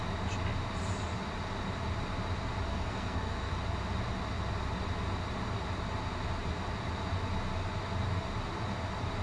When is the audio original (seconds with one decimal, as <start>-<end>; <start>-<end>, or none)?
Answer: 0.0-2.7; 3.5-9.2